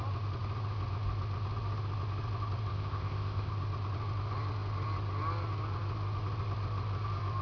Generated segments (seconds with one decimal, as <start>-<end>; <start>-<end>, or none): 2.7-3.5

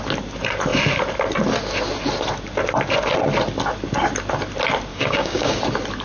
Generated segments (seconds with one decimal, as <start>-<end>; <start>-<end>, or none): 4.9-5.6

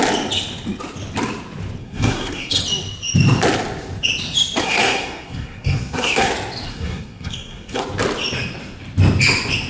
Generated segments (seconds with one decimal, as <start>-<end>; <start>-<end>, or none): 1.8-2.6; 4.6-6.3; 6.7-7.8

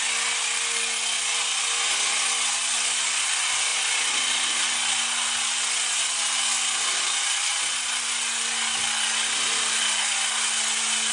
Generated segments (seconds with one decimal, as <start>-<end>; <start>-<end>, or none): none